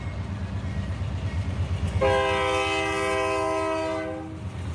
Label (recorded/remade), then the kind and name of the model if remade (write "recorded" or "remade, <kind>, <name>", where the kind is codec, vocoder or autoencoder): recorded